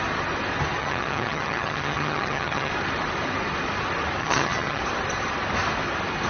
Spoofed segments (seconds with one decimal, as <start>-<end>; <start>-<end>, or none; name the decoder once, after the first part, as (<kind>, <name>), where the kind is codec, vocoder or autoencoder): 0.8-2.7 (vocoder, HiFi-GAN); 4.2-4.8

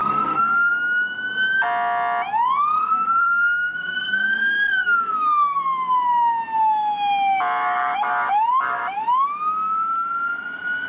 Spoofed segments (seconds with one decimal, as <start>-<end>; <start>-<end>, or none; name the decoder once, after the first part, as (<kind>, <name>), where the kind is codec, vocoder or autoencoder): 0.0-0.7 (codec, SNAC); 2.8-5.6

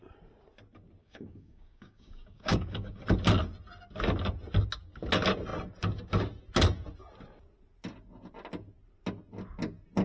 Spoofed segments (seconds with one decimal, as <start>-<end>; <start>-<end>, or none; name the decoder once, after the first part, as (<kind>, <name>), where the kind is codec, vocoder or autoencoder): 1.0-3.0 (codec, DAC)